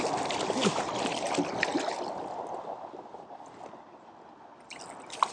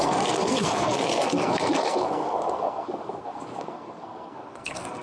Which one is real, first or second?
first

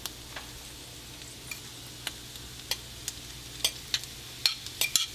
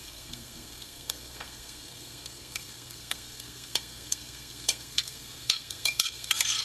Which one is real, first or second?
first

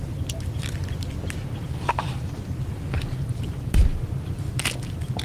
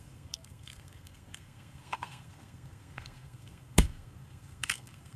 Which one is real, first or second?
first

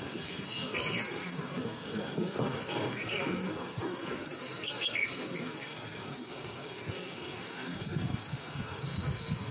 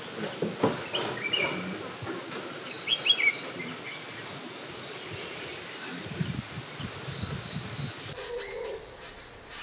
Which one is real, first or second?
second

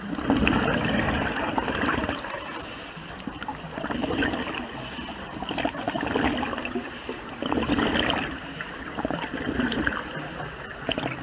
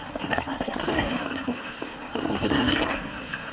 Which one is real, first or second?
first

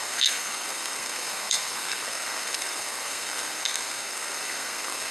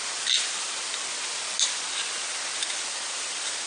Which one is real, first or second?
second